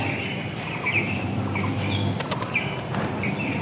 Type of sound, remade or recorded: recorded